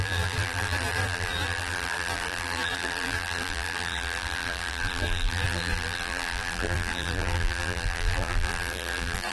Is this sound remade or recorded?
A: remade